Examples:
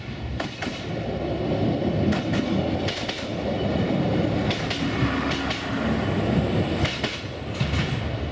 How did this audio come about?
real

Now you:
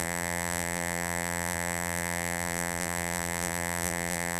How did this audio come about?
fake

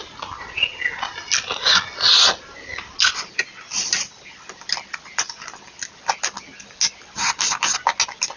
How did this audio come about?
real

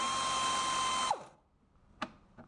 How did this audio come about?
real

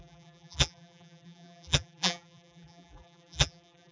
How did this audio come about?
fake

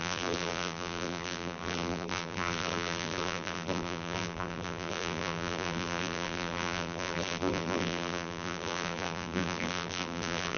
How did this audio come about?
fake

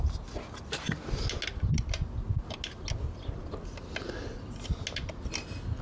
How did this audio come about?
real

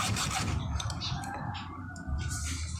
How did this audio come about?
fake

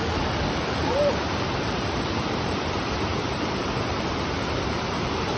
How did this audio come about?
fake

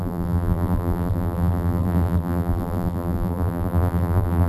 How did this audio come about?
fake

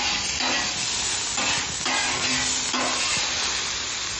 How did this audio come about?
real